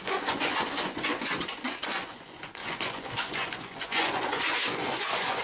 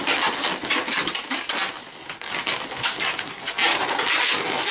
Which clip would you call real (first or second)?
second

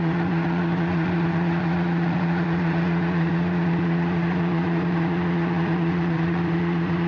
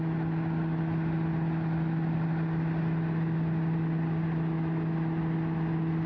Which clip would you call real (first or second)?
second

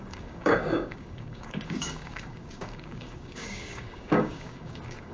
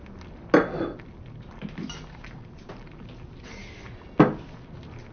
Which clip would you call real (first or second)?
second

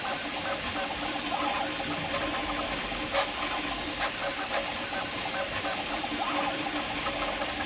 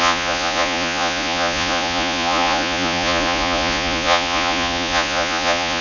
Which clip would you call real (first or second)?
first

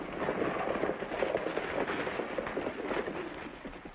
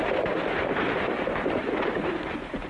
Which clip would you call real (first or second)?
first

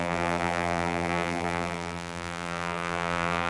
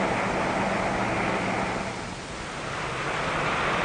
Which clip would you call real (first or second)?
second